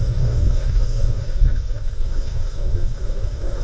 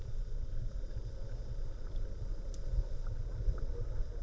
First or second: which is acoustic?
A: second